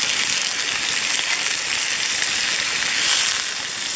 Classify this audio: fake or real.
real